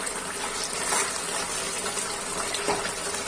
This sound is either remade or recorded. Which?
recorded